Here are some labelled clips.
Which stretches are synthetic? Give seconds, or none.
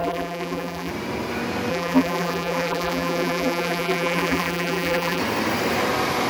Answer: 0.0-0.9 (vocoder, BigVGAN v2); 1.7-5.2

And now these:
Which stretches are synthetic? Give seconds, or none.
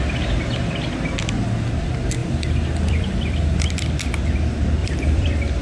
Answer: 2.2-3.7 (vocoder, BigVGAN v2); 4.8-5.6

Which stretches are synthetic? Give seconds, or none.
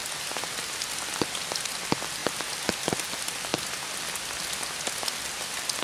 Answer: 0.9-2.2 (vocoder, BigVGAN v2); 3.0-3.5; 5.1-5.8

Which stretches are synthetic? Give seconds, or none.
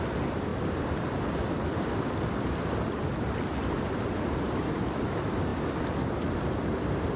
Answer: none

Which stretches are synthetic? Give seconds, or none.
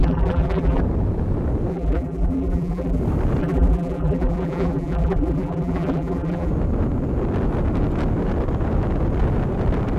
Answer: 0.0-0.8 (vocoder, BigVGAN v2); 1.7-3.0; 3.4-6.5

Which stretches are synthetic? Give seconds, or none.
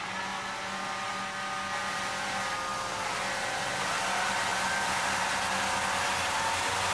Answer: 1.8-3.7 (vocoder, BigVGAN v2); 4.5-5.2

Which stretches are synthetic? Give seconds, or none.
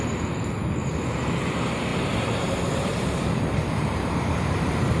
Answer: 0.0-0.8 (vocoder, BigVGAN v2); 1.5-5.0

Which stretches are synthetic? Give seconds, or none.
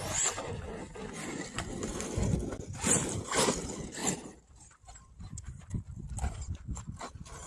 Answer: 4.0-5.6 (vocoder, BigVGAN v2)